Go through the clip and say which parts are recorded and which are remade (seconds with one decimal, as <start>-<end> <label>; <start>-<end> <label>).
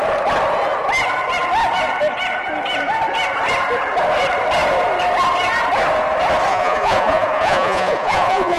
0.0-6.5 recorded; 6.5-8.6 remade